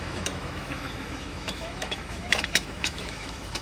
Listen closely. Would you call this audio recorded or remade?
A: remade